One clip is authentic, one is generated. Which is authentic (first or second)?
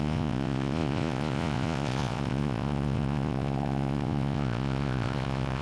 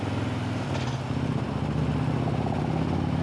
second